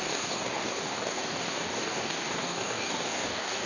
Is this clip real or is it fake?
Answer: fake